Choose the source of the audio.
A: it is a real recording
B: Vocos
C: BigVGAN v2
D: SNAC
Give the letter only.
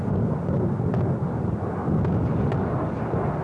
A